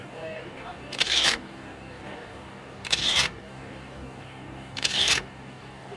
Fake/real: fake